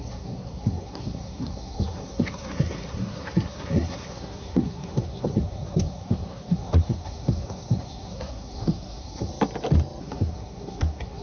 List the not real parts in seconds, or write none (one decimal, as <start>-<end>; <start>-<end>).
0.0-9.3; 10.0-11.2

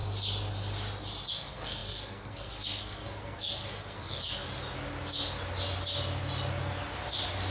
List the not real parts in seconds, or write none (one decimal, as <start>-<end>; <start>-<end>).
1.3-4.5

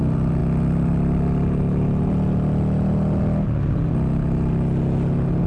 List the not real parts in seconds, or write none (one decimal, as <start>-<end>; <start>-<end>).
none

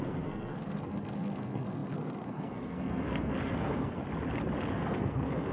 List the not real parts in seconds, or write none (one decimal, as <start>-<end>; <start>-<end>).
0.0-4.0; 4.7-5.5